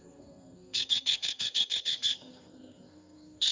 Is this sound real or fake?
fake